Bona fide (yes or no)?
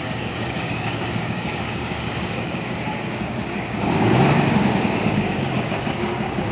no